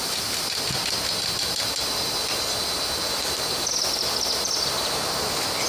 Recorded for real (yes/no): yes